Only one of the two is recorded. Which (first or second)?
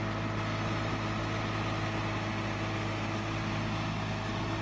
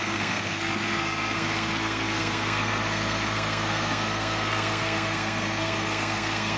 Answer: first